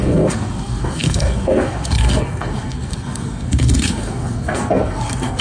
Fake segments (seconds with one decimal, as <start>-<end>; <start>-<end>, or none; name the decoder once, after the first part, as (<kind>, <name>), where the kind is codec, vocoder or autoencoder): 0.0-5.4 (codec, SNAC)